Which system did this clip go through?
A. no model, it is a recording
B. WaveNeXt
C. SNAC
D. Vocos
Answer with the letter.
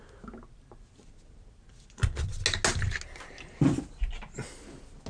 A